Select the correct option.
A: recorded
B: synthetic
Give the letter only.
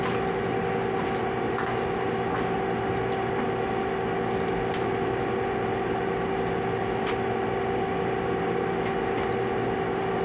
A